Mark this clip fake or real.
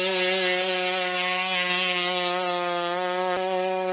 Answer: real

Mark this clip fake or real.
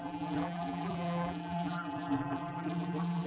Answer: fake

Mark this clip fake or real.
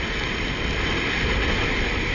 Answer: real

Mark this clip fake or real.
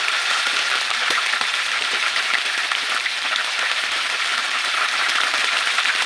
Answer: fake